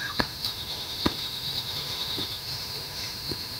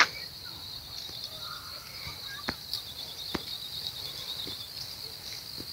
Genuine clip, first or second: second